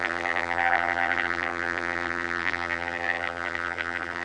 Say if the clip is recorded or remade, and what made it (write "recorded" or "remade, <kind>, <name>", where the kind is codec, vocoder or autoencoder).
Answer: remade, vocoder, BigVGAN v2